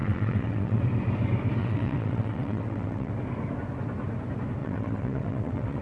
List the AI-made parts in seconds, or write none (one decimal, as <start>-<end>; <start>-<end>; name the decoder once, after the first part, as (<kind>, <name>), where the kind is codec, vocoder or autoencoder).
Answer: 0.0-0.8 (vocoder, WaveNeXt); 1.6-3.1; 4.6-5.8